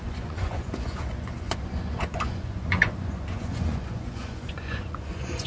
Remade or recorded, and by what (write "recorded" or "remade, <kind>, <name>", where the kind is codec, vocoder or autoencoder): remade, vocoder, Vocos